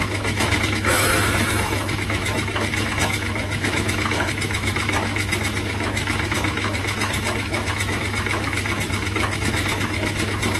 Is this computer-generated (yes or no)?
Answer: yes